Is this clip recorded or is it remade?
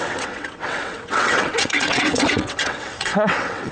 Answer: remade